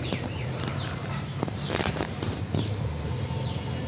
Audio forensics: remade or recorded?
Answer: remade